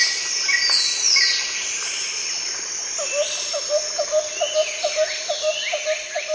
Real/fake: real